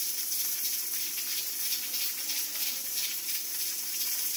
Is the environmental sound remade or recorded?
remade